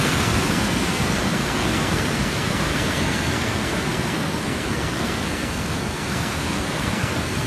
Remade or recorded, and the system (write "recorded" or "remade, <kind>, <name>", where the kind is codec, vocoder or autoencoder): remade, codec, SNAC